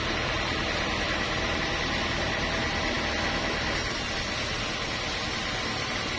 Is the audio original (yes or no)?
yes